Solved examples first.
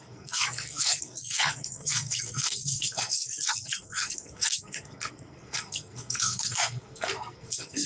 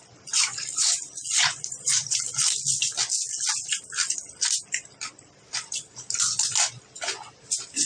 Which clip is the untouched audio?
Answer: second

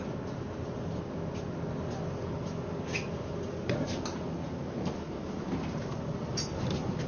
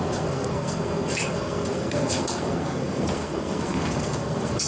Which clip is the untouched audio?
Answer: first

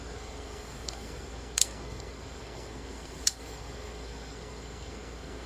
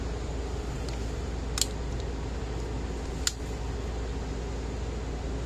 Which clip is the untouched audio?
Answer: second